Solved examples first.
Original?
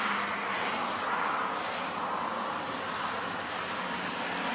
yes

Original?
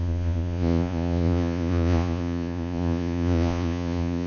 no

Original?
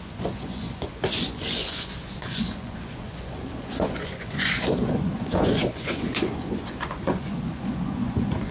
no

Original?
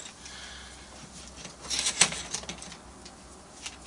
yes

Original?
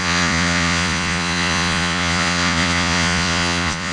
no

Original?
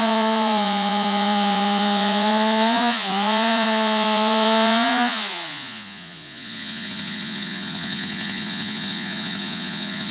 no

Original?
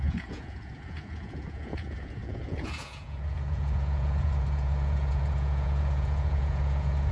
no